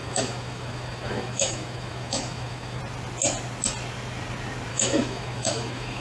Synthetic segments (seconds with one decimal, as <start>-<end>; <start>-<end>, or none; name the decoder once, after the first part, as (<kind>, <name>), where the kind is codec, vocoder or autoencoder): 0.0-2.8 (autoencoder, DAC-VAE); 4.7-6.0